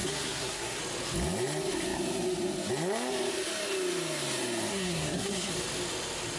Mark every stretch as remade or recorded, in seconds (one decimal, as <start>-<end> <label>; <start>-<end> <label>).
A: 0.0-0.8 remade; 0.8-4.7 recorded; 4.7-5.5 remade; 5.5-6.4 recorded